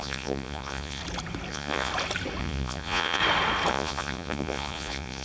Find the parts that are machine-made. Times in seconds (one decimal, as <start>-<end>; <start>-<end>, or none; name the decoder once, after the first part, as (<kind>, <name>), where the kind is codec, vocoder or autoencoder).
0.0-1.0 (vocoder, Vocos); 1.5-1.9; 2.4-3.2; 3.7-5.2